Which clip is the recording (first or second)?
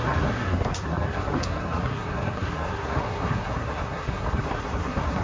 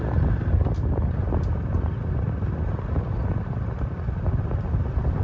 second